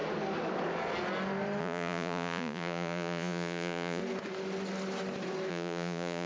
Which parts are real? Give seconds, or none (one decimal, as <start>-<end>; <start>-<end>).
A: 0.0-1.6; 4.0-5.5